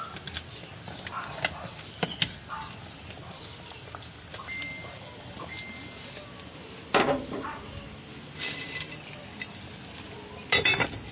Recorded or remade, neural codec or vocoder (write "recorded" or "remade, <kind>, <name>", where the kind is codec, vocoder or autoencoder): recorded